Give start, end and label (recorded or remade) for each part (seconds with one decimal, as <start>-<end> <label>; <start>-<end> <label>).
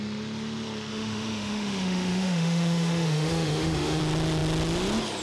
0.0-0.9 recorded; 0.9-4.0 remade; 4.0-5.2 recorded